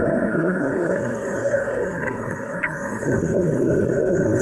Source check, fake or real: fake